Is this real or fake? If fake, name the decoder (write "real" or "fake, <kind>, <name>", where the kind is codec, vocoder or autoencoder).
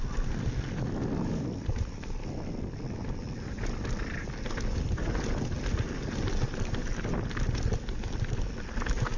real